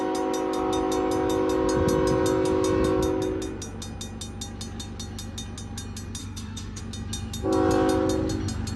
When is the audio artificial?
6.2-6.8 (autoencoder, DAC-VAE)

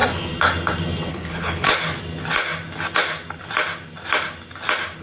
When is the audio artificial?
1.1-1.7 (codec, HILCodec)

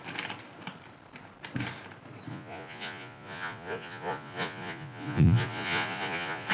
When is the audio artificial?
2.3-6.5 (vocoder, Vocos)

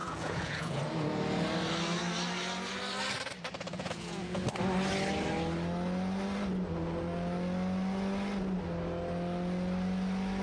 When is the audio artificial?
0.0-0.8 (vocoder, Vocos); 3.7-4.4